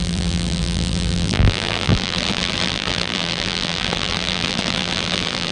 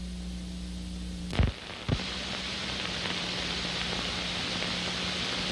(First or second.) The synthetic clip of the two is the first